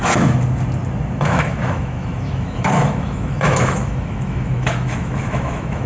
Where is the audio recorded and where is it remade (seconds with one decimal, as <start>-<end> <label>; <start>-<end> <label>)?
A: 0.0-1.2 recorded; 1.2-5.9 remade